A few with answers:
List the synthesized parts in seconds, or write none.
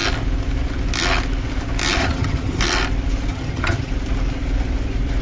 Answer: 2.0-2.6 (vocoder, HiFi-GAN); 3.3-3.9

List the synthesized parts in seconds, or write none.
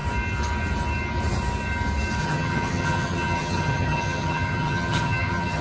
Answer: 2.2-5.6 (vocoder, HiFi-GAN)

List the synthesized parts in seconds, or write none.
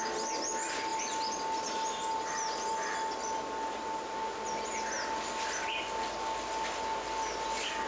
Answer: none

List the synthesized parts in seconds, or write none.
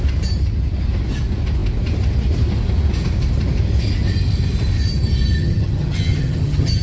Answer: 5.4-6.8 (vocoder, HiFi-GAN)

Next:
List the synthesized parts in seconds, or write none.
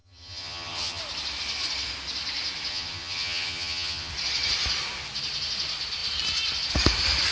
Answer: 0.0-1.0 (vocoder, HiFi-GAN); 2.7-4.1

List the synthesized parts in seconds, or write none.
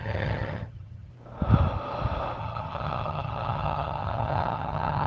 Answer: 0.0-1.1 (vocoder, HiFi-GAN); 2.4-5.1